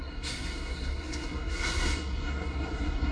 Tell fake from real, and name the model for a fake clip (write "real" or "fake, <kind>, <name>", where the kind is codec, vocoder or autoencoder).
fake, codec, SNAC